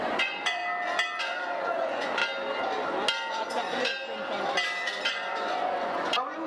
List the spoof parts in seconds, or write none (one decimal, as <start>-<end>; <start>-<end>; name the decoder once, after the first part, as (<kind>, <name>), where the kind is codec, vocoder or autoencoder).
0.0-0.6 (vocoder, Vocos); 1.2-2.2; 3.3-3.9; 5.1-6.5